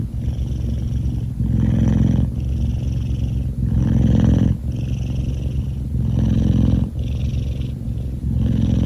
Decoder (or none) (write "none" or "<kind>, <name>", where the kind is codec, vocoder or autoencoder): none